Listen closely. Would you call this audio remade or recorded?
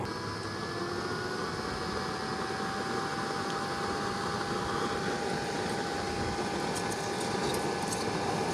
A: recorded